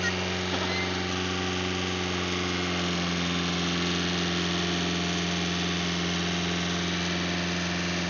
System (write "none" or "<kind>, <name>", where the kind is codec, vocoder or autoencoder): none